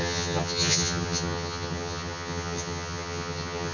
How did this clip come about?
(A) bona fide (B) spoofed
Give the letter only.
B